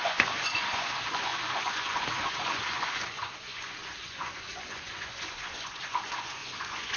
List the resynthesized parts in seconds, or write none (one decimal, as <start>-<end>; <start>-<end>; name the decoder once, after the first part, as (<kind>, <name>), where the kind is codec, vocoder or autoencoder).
0.0-7.0 (vocoder, Vocos)